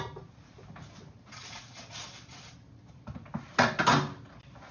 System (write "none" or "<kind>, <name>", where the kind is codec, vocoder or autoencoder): none